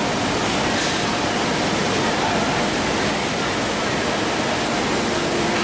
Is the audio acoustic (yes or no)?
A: yes